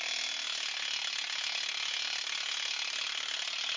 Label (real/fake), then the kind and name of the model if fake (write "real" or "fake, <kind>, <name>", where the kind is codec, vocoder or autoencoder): real